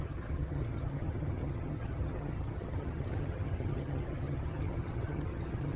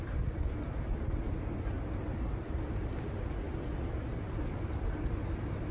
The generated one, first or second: first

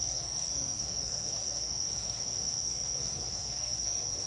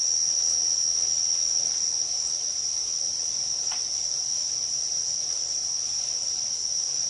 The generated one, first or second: first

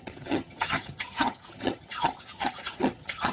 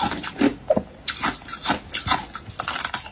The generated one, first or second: first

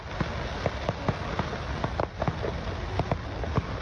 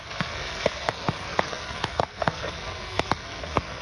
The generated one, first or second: second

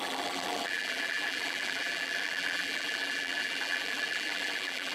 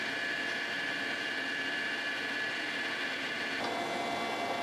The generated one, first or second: first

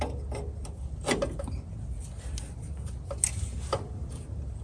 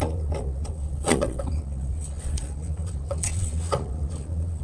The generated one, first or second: second